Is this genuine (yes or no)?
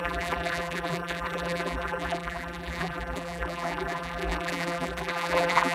no